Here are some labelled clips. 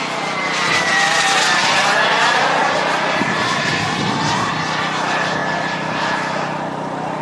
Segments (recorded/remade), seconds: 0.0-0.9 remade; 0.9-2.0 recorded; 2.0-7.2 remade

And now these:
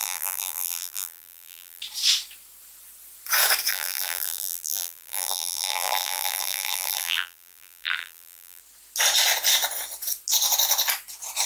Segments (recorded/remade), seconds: 0.0-1.8 remade; 1.8-3.7 recorded; 3.7-8.6 remade; 8.6-11.5 recorded

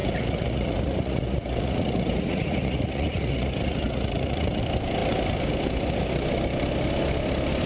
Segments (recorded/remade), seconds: 0.0-4.6 remade; 4.6-7.7 recorded